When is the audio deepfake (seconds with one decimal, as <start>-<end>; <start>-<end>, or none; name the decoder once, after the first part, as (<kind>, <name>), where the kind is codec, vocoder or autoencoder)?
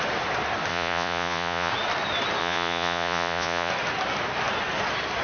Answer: 0.7-1.7 (vocoder, Vocos); 2.4-3.7